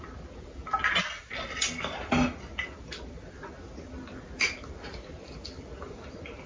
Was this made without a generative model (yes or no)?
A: yes